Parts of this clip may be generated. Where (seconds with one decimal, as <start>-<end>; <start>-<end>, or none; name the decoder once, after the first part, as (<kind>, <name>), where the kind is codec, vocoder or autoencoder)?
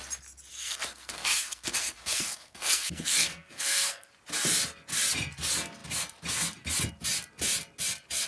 0.5-4.1 (codec, SNAC)